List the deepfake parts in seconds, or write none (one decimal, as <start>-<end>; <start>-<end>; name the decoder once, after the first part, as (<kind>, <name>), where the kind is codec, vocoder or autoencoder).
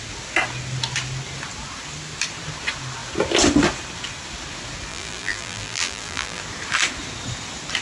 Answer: 4.9-6.4 (vocoder, BigVGAN v2)